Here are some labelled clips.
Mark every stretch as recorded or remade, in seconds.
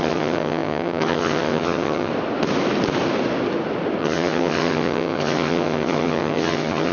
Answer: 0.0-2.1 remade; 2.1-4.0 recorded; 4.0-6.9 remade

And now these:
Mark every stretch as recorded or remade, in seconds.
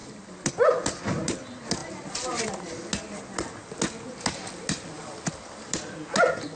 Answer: 0.0-6.6 recorded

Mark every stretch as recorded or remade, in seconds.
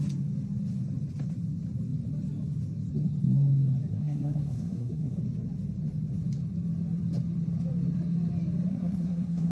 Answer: 0.0-3.9 recorded; 3.9-5.2 remade; 5.2-8.7 recorded; 8.7-9.5 remade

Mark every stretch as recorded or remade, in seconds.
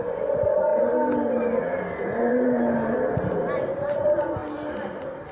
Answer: 0.0-5.3 recorded